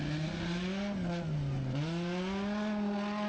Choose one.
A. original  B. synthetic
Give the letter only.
A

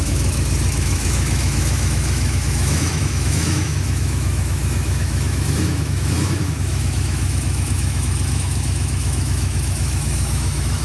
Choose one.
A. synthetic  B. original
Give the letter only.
A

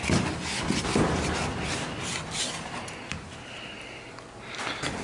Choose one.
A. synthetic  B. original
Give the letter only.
B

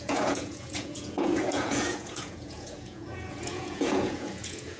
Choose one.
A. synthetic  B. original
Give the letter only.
A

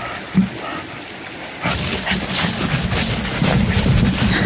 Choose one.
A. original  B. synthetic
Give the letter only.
A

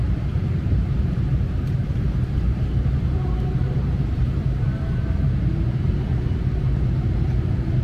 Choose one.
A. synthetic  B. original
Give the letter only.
A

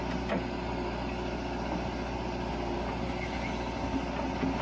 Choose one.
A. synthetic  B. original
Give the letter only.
B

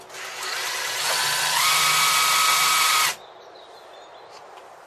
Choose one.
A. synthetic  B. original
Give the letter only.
B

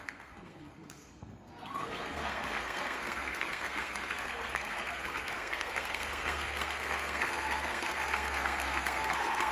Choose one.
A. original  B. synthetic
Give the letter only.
B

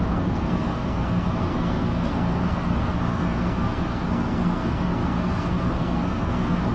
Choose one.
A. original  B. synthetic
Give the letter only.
B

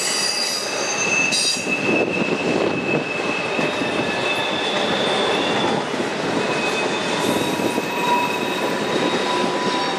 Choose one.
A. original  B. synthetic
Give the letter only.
A